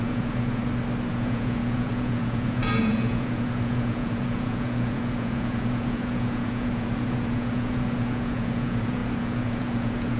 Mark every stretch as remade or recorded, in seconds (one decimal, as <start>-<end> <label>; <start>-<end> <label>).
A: 0.0-0.6 remade; 0.6-1.1 recorded; 1.1-10.2 remade